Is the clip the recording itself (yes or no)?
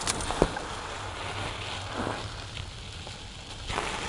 yes